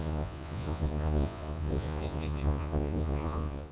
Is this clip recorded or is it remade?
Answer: remade